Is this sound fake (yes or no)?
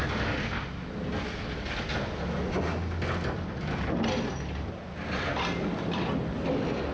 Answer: no